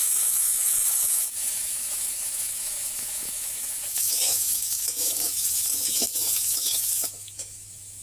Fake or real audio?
fake